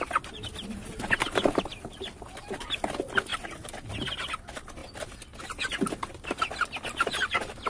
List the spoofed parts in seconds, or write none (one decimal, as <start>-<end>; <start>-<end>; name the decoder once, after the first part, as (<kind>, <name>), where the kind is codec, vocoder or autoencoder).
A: none